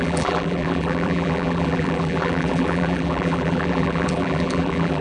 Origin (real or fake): fake